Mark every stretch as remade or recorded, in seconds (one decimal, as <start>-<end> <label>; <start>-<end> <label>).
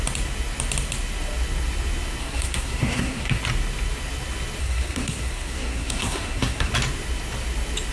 0.0-2.2 recorded; 2.2-3.4 remade; 3.4-4.6 recorded; 4.6-6.7 remade; 6.7-7.9 recorded